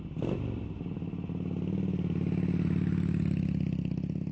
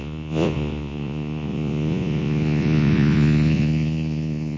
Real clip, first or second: first